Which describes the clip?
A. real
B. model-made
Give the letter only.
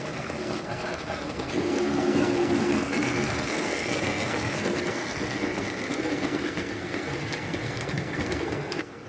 B